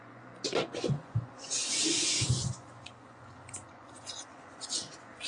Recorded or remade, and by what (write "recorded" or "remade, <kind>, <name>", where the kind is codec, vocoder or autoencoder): remade, vocoder, Vocos